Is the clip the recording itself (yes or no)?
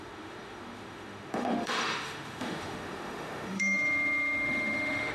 no